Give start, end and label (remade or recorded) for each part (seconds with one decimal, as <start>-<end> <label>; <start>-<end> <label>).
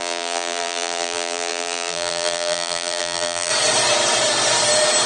0.0-3.5 remade; 3.5-5.1 recorded